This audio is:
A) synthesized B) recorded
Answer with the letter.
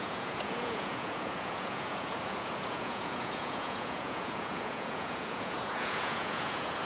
A